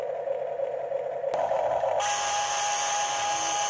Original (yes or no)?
yes